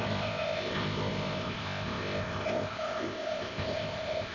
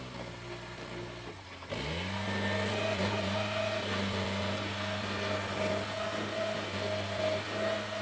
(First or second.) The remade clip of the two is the first